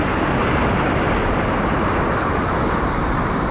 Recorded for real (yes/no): yes